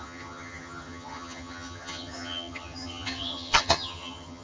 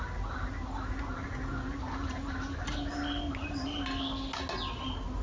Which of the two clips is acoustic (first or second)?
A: second